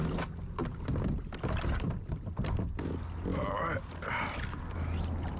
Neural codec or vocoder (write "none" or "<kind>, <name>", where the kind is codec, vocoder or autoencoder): none